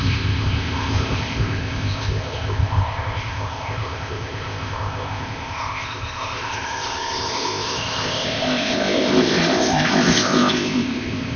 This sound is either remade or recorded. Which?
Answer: remade